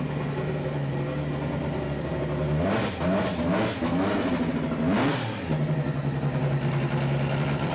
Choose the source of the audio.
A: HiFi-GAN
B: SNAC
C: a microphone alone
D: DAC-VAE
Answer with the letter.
C